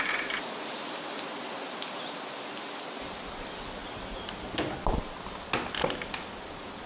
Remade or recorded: recorded